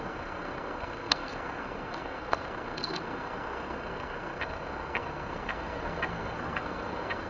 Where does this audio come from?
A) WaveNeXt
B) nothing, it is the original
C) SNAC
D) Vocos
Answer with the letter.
C